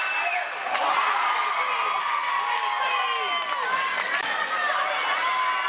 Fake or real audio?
real